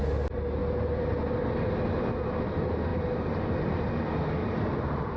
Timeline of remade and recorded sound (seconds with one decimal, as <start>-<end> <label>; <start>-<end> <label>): 0.0-2.9 recorded; 2.9-3.9 remade; 3.9-4.4 recorded; 4.4-5.2 remade